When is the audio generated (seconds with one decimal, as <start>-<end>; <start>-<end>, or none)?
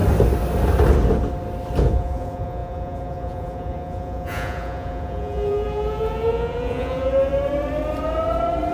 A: 1.8-7.3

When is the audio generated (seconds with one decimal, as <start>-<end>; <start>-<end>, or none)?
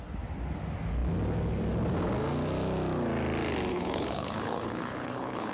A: 3.7-5.5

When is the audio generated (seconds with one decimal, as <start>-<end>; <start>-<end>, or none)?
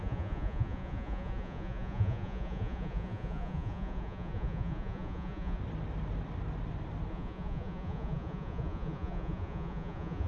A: 0.0-5.6; 7.1-10.3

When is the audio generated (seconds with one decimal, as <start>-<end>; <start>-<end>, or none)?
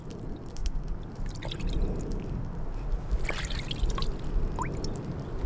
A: none